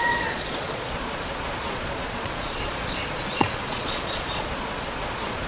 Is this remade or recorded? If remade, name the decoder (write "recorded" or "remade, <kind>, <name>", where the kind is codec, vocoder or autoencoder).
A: remade, vocoder, Vocos